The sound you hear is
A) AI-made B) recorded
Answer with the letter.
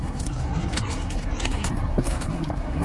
A